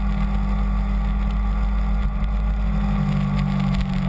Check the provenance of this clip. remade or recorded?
recorded